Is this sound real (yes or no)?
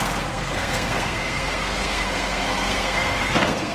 no